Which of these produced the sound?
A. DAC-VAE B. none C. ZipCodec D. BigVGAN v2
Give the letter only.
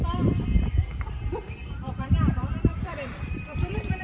D